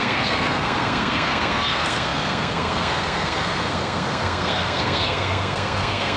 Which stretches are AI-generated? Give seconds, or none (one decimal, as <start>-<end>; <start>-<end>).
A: 0.0-6.2